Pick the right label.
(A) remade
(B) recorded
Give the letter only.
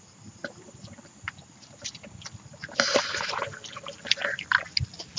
B